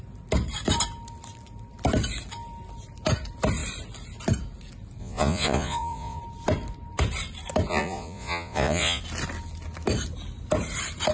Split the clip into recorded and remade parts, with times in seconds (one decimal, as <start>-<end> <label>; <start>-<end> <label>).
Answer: 0.0-5.0 recorded; 5.0-6.2 remade; 6.2-7.7 recorded; 7.7-9.0 remade; 9.0-11.1 recorded